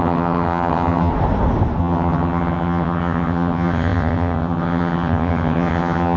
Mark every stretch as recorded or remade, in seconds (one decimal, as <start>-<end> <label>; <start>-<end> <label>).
0.0-1.1 remade; 1.1-1.8 recorded; 1.8-6.2 remade